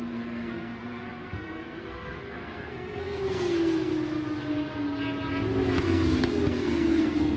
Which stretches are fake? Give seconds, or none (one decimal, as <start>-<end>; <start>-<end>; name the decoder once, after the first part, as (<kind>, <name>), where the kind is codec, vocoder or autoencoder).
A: 0.0-3.9 (codec, SNAC); 5.8-7.4